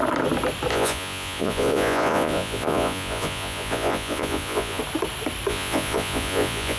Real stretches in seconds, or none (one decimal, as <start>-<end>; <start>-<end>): 0.0-0.7; 4.8-5.5